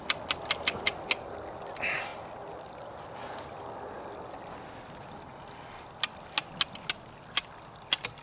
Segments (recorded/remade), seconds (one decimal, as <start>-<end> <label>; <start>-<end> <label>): 0.0-8.2 recorded